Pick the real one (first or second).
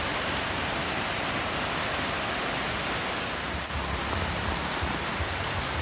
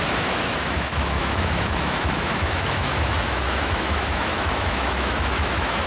first